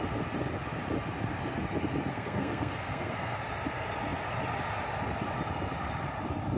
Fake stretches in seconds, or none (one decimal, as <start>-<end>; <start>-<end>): 2.1-3.4